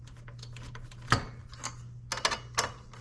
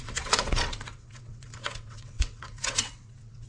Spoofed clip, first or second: second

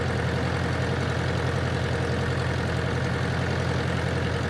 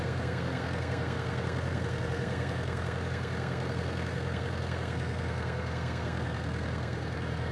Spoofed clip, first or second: second